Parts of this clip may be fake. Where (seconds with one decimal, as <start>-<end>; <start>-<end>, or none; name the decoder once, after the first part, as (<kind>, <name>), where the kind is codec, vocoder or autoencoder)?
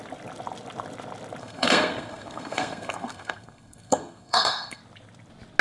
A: 1.4-4.8 (codec, SNAC)